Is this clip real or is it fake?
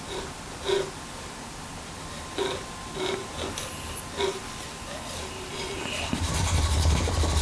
real